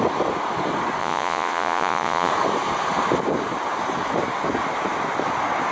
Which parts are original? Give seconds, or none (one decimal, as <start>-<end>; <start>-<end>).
0.0-1.0; 2.3-5.7